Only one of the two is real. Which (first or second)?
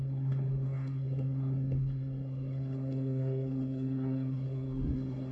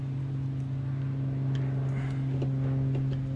second